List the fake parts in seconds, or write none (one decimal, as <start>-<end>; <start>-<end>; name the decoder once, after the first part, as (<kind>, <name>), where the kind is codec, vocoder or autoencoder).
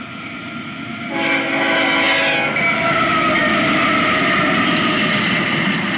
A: none